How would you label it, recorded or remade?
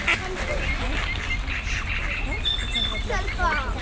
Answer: recorded